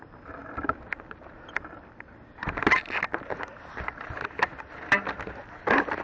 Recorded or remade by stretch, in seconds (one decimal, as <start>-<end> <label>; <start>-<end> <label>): 0.0-6.0 recorded